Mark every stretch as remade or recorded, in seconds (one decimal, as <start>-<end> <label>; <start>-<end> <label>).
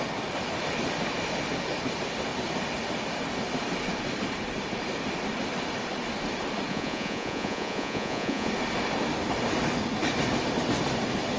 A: 0.0-6.7 recorded; 6.7-8.5 remade; 8.5-11.4 recorded